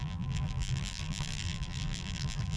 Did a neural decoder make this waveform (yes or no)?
yes